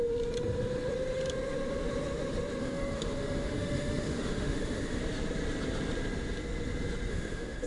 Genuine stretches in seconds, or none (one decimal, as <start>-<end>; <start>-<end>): 0.0-2.6; 5.0-7.1